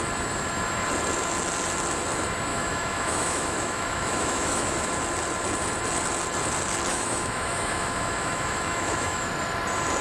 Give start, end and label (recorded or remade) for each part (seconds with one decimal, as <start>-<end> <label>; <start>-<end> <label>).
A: 0.0-2.5 recorded; 2.5-4.9 remade; 4.9-6.9 recorded; 6.9-9.3 remade; 9.3-10.0 recorded